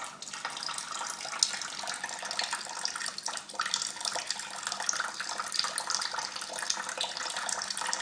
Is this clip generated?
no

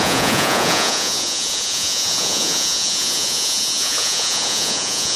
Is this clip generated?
yes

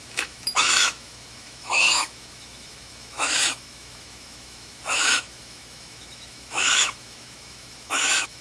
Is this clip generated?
yes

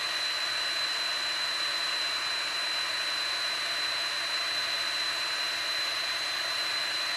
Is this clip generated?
no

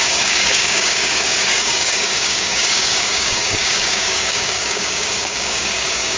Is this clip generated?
yes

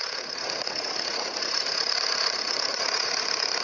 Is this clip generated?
yes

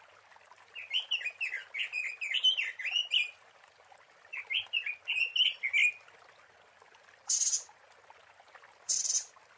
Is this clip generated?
no